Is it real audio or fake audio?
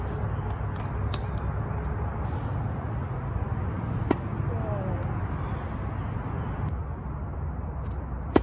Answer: real